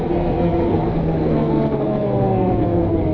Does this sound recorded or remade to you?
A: remade